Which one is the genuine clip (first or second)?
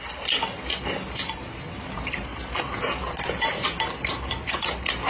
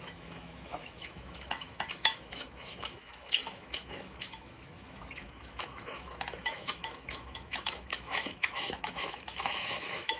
first